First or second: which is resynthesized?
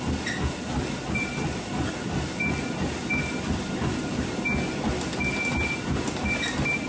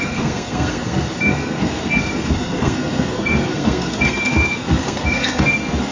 second